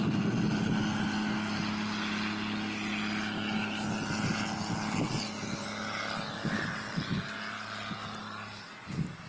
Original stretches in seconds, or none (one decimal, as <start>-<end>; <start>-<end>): 0.0-9.3